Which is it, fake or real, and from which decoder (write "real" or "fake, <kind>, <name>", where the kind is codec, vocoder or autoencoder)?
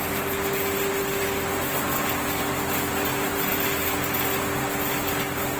real